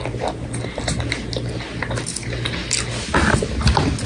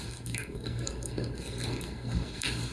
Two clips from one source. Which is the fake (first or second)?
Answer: second